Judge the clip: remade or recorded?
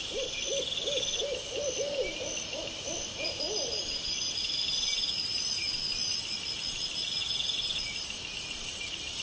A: remade